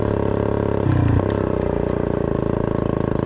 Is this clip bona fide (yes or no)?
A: yes